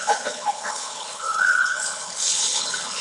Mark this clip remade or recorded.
remade